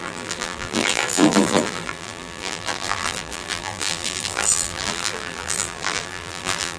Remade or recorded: remade